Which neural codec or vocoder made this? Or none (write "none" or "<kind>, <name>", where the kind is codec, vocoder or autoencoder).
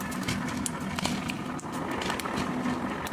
none